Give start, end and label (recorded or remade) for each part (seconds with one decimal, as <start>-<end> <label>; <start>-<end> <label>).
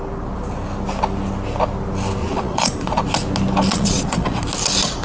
0.0-2.2 recorded; 2.2-3.0 remade; 3.0-3.7 recorded; 3.7-4.4 remade; 4.4-5.0 recorded